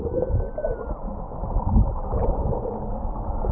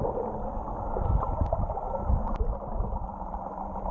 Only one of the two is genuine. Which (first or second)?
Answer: first